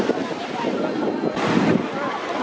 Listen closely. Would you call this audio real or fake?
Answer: real